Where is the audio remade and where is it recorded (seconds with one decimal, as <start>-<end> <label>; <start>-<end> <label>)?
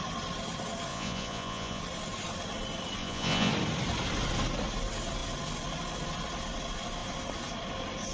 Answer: 0.0-0.9 recorded; 0.9-1.8 remade; 1.8-3.0 recorded; 3.0-3.5 remade; 3.5-8.1 recorded